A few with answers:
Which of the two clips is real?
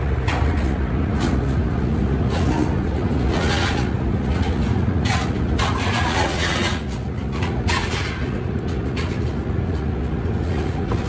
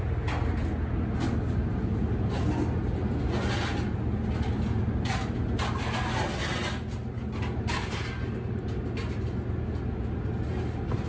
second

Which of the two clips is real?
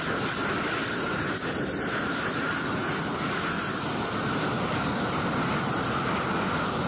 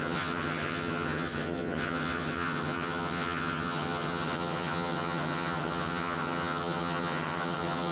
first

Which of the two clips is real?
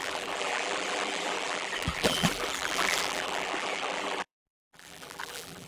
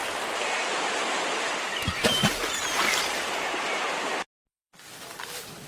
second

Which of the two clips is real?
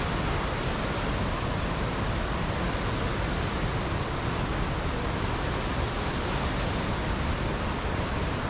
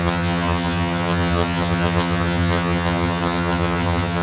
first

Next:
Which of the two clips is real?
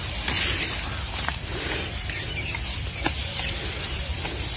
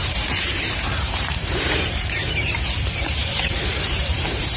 first